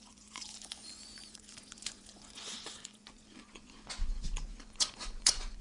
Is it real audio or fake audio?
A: fake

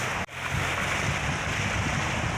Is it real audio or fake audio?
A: real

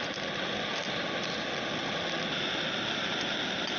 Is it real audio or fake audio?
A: real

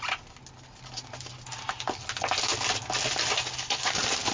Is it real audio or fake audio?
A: real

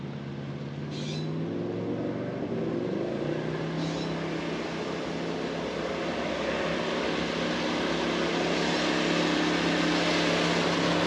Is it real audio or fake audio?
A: real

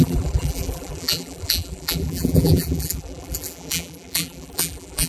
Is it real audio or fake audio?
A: fake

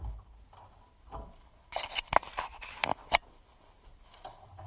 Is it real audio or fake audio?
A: real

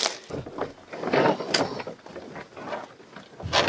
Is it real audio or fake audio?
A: real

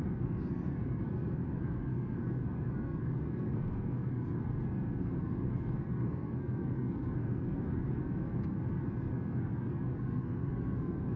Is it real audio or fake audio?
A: fake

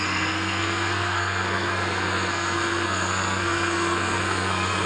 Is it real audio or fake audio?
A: fake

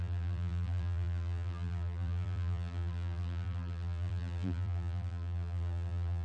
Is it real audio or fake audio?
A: fake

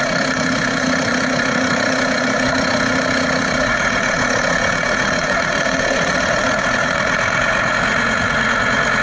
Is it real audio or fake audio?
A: fake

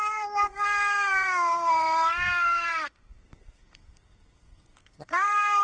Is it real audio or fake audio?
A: fake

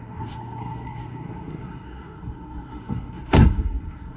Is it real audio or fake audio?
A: fake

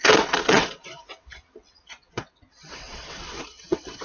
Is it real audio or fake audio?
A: fake